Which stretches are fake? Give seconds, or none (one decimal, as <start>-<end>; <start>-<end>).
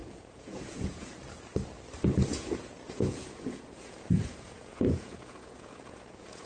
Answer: 0.0-1.2; 2.3-6.5